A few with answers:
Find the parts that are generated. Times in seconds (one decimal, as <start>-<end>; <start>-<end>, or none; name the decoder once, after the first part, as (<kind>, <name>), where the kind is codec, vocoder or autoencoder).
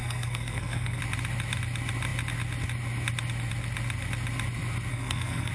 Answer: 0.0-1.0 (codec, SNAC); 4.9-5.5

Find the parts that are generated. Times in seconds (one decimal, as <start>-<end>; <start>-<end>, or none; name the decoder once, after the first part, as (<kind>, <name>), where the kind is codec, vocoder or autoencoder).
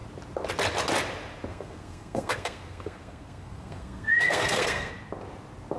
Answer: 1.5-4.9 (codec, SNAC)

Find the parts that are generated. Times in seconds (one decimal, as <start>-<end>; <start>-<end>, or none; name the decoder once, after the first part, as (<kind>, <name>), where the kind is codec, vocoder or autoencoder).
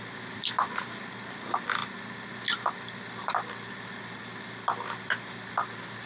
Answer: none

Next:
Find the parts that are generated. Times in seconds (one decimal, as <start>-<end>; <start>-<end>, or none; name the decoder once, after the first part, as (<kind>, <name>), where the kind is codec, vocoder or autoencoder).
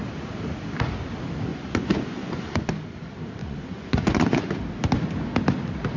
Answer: 1.5-2.7 (vocoder, Vocos); 3.4-4.6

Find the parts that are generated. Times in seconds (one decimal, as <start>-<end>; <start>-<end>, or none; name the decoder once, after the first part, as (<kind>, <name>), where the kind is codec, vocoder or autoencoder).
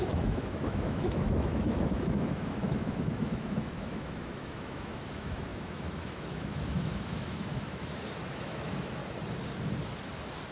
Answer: 0.0-9.0 (autoencoder, DAC-VAE)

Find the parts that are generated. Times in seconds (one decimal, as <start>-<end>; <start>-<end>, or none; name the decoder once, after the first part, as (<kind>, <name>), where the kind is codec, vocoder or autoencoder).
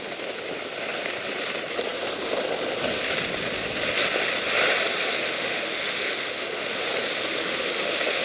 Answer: 5.1-6.7 (autoencoder, DAC-VAE); 7.3-8.2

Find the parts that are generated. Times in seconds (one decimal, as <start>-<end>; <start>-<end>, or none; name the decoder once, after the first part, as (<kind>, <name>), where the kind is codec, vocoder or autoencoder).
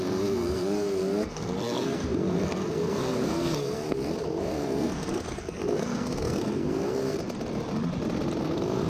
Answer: 0.0-7.2 (codec, SNAC); 8.4-8.9